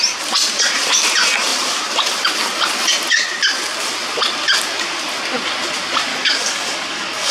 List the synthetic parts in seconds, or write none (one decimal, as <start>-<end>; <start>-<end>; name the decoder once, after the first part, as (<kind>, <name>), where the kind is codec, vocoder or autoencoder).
6.1-7.3 (codec, DAC)

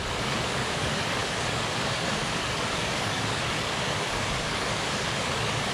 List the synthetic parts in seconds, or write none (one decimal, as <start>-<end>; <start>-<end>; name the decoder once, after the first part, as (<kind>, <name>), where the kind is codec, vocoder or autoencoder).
0.0-5.7 (codec, DAC)